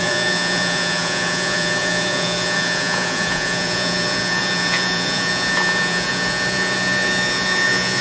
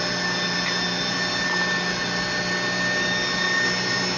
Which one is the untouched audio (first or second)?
second